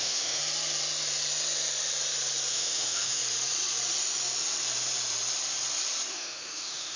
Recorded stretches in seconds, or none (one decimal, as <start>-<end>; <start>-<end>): 0.4-2.5; 3.2-6.1